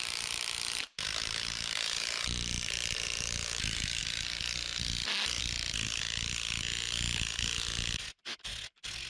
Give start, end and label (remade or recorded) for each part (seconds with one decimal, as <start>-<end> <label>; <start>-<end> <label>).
0.0-4.0 remade; 4.0-9.1 recorded